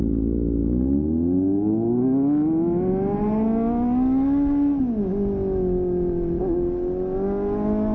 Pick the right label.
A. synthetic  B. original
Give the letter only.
B